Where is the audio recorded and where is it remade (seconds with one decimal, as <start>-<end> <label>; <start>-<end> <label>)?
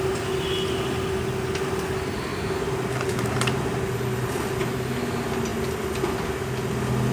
0.0-2.3 recorded; 2.3-4.4 remade; 4.4-7.1 recorded